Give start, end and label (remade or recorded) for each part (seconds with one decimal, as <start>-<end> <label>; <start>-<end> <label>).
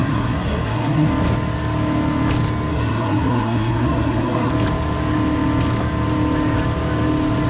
0.0-1.1 remade; 1.1-2.7 recorded; 2.7-4.5 remade; 4.5-7.5 recorded